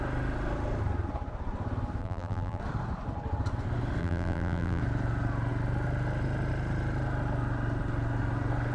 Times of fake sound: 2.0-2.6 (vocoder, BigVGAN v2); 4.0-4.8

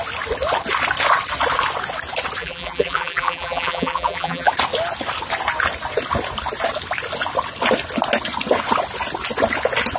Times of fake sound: 2.4-4.5 (vocoder, BigVGAN v2)

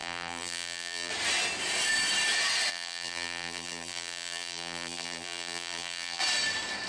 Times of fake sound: 0.0-1.1 (vocoder, BigVGAN v2); 2.7-6.2

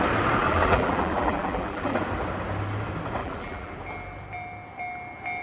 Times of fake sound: 0.4-2.0 (vocoder, BigVGAN v2); 3.2-3.7